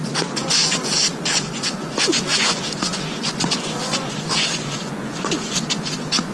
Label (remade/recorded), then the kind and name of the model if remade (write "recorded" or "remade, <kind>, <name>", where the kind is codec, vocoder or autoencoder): remade, vocoder, Vocos